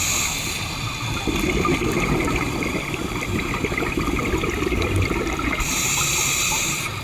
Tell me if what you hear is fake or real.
real